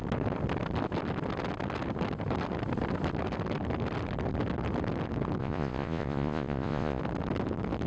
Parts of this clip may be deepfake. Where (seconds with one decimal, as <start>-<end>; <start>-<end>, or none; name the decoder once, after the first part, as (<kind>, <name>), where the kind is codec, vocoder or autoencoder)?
5.4-7.0 (vocoder, Vocos)